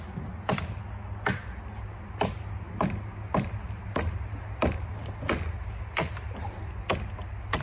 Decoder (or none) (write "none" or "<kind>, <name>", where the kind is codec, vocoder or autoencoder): none